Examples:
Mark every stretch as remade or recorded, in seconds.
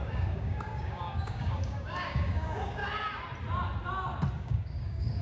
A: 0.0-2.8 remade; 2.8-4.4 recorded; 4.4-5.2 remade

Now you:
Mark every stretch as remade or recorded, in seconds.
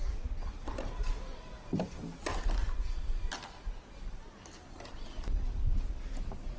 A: 0.0-2.3 remade; 2.3-6.0 recorded; 6.0-6.6 remade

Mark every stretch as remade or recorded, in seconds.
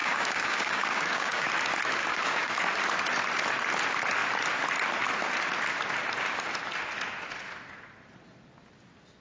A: 0.0-1.5 remade; 1.5-2.0 recorded; 2.0-2.7 remade; 2.7-9.2 recorded